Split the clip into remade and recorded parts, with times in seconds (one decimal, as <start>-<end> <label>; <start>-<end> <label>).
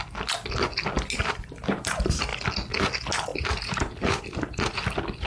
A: 0.0-1.2 recorded; 1.2-1.9 remade; 1.9-3.3 recorded; 3.3-4.7 remade; 4.7-5.3 recorded